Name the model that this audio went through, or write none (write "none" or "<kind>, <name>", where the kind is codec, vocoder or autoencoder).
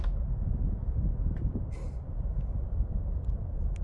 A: none